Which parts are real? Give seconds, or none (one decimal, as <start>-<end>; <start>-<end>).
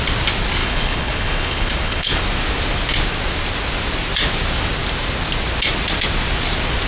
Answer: 0.0-0.6; 2.2-6.9